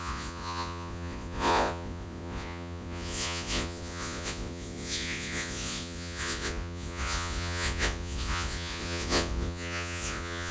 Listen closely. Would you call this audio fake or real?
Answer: fake